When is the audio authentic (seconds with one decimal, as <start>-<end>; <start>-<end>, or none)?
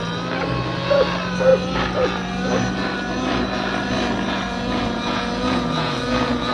0.0-4.5